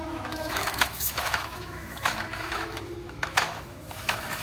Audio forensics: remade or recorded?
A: remade